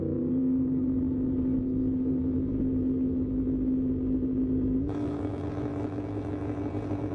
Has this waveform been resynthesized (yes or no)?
yes